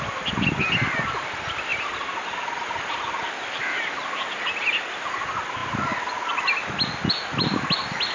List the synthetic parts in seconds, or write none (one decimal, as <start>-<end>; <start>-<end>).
none